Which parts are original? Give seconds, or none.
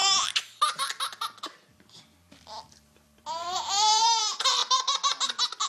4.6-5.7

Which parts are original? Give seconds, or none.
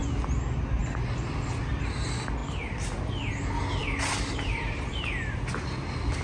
0.0-3.8; 5.0-6.2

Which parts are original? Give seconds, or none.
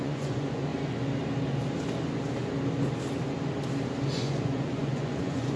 0.7-4.1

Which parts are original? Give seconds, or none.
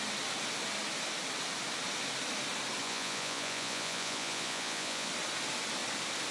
0.0-2.8; 5.1-6.3